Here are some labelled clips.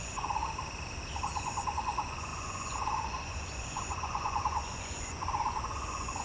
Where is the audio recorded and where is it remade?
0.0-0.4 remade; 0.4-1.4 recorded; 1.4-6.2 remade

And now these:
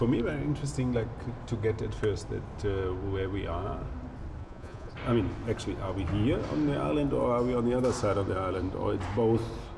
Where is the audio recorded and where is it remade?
0.0-4.4 recorded; 4.4-4.9 remade; 4.9-9.8 recorded

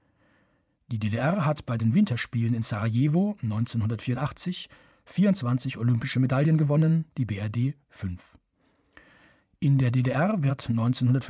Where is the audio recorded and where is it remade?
0.0-11.3 remade